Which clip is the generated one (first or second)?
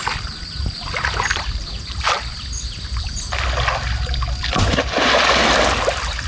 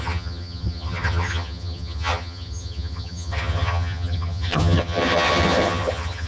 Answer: second